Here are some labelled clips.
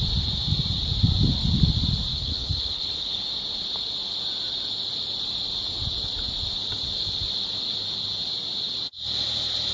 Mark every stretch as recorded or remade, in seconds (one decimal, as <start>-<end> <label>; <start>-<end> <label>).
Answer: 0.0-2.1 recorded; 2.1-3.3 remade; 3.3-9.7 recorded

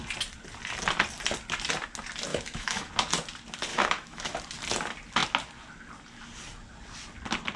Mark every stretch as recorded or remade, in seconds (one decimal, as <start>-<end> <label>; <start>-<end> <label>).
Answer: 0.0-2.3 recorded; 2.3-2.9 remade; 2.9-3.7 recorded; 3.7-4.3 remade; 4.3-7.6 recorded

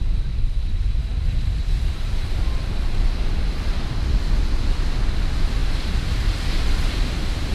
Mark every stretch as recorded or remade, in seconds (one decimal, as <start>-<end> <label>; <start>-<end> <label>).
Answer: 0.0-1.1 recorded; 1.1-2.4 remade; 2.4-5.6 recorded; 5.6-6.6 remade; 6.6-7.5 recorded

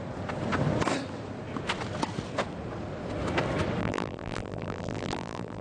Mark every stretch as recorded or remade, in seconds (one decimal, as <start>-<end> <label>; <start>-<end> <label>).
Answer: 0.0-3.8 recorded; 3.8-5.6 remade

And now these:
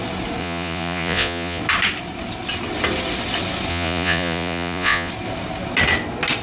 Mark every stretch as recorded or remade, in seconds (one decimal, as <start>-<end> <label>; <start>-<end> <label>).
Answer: 0.0-0.4 recorded; 0.4-1.6 remade; 1.6-3.7 recorded; 3.7-5.1 remade; 5.1-6.4 recorded

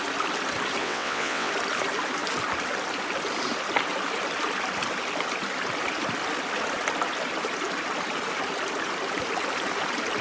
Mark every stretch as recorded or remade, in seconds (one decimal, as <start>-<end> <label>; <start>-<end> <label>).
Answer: 0.0-0.8 recorded; 0.8-1.5 remade; 1.5-10.2 recorded

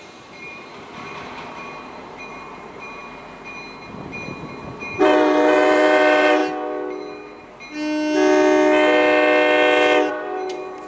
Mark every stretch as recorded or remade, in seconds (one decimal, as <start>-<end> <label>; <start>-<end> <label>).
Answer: 0.0-3.0 remade; 3.0-4.8 recorded; 4.8-6.4 remade; 6.4-10.1 recorded; 10.1-10.9 remade